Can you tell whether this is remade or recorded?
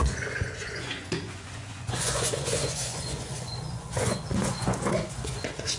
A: remade